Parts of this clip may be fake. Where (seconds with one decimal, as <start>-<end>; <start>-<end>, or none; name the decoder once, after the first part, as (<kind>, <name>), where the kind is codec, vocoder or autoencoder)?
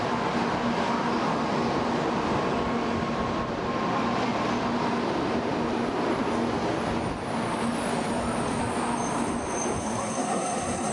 9.8-10.9 (codec, SNAC)